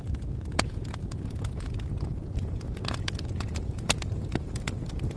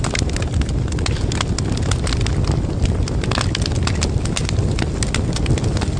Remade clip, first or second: first